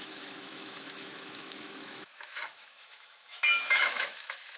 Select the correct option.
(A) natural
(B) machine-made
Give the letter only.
B